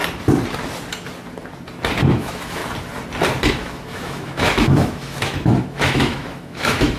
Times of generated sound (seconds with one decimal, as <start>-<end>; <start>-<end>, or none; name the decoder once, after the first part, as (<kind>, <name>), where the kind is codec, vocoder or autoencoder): 2.1-2.6 (autoencoder, DAC-VAE); 3.5-7.0